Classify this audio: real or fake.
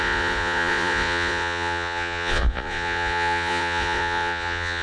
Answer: fake